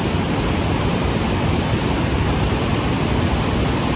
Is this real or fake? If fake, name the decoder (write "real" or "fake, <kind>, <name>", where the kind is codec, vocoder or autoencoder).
real